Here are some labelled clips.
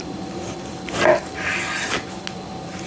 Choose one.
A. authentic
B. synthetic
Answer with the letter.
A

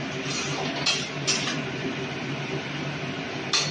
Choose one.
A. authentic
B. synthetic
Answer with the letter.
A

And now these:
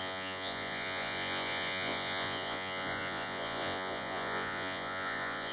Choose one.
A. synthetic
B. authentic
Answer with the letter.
A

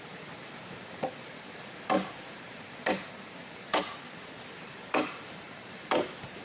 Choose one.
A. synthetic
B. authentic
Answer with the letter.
A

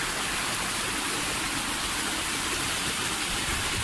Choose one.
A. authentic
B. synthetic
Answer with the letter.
B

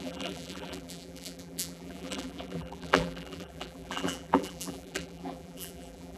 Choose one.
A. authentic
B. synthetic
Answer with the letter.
B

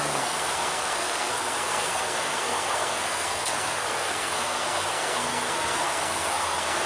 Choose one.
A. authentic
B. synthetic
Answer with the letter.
B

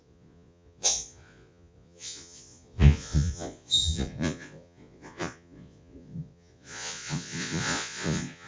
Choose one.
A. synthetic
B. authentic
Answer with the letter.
A